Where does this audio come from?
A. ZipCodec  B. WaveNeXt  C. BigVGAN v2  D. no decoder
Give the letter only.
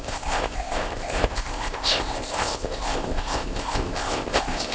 A